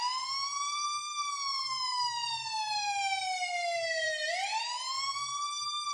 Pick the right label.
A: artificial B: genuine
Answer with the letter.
A